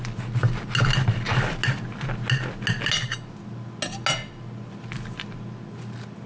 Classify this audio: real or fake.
real